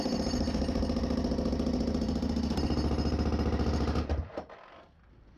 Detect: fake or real real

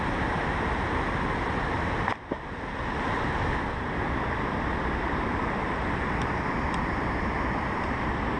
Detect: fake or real real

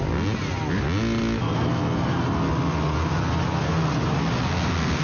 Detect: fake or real real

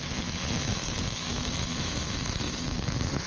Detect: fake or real fake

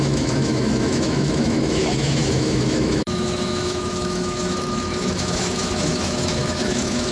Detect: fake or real fake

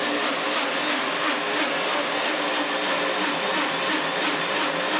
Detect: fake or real real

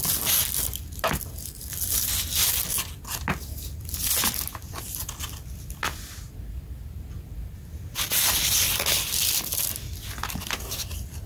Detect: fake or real real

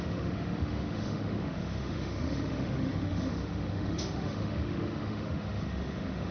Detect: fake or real fake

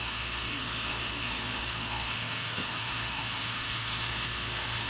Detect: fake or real fake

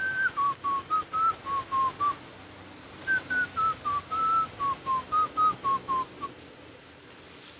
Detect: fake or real real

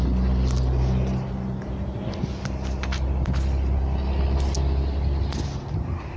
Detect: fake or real real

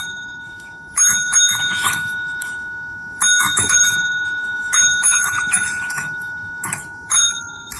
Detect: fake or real fake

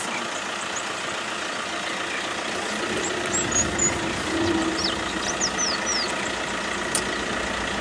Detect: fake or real real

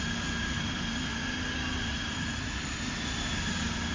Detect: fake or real real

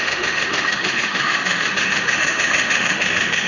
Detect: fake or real fake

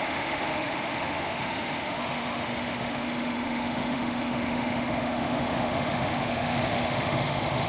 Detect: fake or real fake